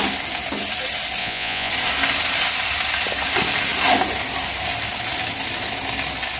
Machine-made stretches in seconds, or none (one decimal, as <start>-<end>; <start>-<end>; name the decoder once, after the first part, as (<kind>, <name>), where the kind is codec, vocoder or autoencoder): 1.2-1.7 (vocoder, Vocos)